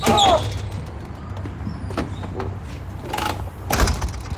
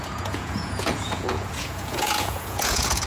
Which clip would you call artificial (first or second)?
second